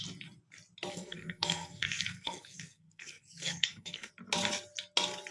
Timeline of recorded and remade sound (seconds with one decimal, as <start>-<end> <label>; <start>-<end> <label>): 0.0-0.9 recorded; 0.9-4.1 remade; 4.1-5.3 recorded